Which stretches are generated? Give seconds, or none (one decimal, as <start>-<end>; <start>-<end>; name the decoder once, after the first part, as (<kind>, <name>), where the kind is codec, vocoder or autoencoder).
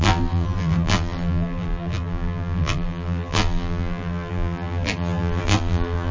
0.0-6.1 (vocoder, BigVGAN v2)